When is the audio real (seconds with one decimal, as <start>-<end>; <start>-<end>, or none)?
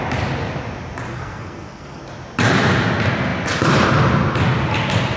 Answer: 0.0-1.1; 2.0-5.2